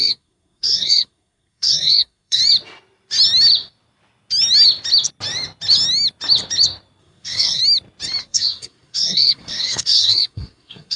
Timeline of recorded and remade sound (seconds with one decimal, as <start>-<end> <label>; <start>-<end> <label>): 0.0-2.4 remade; 2.4-7.0 recorded; 7.0-7.6 remade; 7.6-8.2 recorded; 8.2-11.0 remade